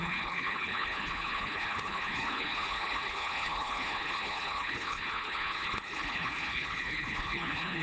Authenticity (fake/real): fake